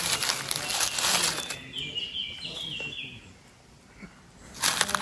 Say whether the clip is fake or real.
real